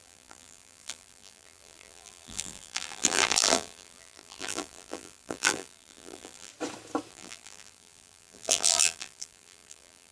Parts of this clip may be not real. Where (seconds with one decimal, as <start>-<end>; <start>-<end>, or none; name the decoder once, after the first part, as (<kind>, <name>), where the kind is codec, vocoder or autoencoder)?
0.0-6.5 (vocoder, BigVGAN v2); 7.1-10.1